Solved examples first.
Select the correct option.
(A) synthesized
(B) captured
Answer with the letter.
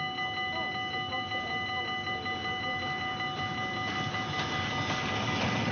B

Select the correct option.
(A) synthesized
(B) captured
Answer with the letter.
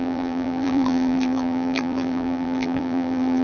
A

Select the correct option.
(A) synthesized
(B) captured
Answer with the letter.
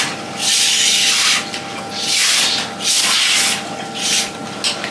B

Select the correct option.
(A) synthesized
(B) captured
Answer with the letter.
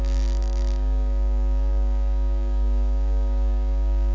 A